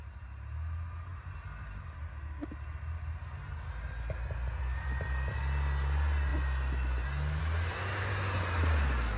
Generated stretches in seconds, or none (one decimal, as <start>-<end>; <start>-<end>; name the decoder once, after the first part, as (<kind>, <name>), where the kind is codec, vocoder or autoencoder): none